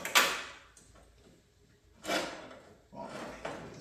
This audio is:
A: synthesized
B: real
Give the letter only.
B